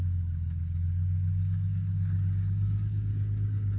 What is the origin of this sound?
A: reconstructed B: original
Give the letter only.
A